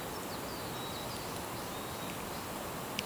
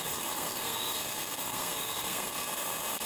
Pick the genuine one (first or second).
first